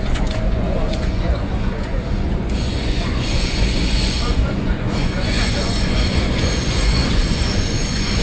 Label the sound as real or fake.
fake